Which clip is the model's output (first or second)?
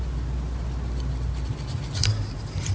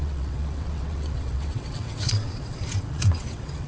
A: second